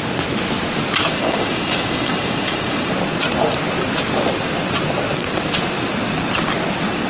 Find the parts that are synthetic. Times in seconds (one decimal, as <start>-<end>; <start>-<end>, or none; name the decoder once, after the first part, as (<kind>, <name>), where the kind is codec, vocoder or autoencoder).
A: 1.1-2.9 (codec, DAC)